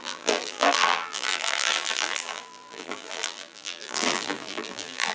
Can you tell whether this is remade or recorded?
remade